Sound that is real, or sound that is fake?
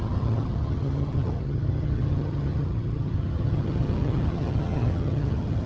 fake